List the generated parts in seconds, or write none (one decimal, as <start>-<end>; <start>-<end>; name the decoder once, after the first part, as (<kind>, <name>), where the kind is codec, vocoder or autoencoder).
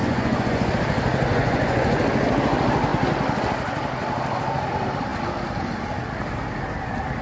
0.0-0.7 (vocoder, Vocos); 1.3-2.0